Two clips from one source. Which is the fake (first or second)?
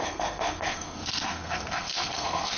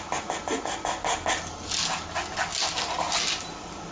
first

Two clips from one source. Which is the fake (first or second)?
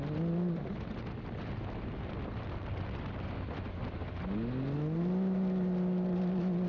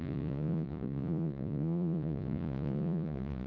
second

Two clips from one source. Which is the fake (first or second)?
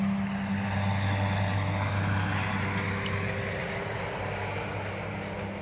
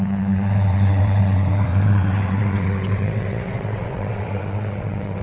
second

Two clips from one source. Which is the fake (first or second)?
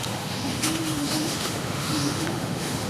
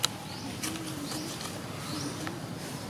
first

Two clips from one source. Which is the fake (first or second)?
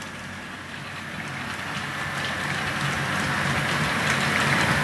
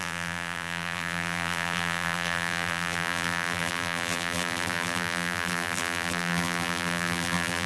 second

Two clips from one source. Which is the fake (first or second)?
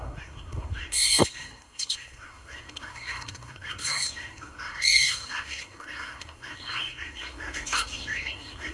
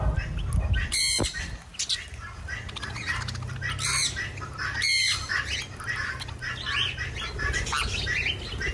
first